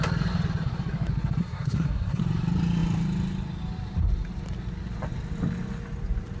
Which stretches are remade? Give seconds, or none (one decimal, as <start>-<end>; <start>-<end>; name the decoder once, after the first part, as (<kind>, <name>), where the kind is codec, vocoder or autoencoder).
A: 1.4-2.2 (codec, SNAC)